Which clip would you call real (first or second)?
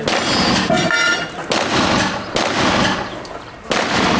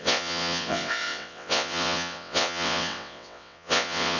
first